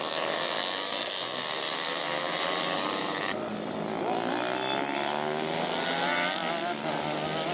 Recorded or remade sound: recorded